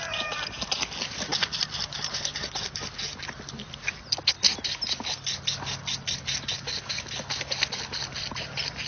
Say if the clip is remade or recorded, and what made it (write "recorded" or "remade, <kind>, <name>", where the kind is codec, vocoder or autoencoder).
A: recorded